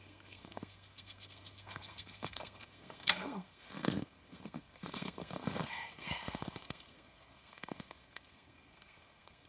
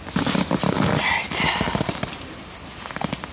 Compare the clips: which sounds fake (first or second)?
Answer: first